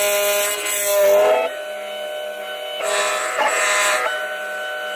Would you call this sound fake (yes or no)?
no